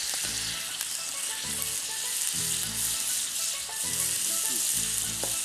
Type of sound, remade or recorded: recorded